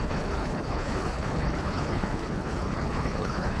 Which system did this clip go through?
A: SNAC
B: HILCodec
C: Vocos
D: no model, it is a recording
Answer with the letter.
B